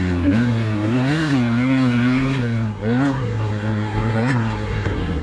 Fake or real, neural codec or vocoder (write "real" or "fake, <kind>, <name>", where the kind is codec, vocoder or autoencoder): fake, codec, SNAC